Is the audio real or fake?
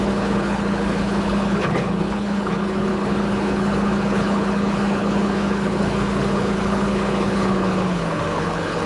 fake